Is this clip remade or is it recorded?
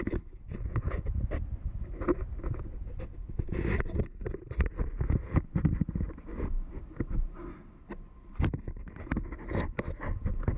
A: recorded